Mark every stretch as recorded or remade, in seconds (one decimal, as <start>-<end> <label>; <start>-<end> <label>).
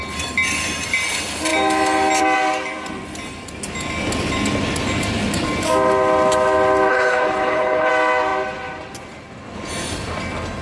0.0-6.9 recorded; 6.9-7.9 remade; 7.9-10.6 recorded